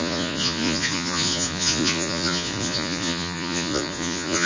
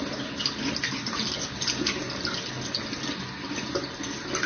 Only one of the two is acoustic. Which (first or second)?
second